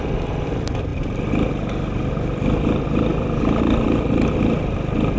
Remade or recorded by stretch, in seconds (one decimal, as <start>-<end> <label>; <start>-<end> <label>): 0.0-5.2 recorded